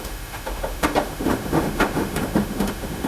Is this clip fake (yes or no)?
yes